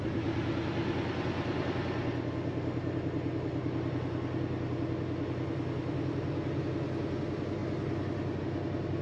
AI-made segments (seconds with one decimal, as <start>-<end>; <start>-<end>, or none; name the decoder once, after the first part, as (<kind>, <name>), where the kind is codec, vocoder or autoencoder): none